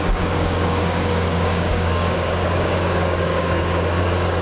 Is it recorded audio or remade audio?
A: remade